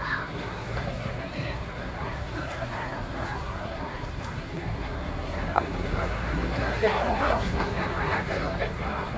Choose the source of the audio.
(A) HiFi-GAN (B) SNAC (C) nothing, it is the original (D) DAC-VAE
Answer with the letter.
B